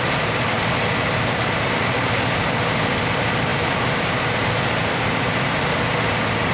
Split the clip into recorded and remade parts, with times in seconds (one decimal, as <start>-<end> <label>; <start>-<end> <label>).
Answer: 0.0-3.5 recorded; 3.5-5.3 remade; 5.3-6.5 recorded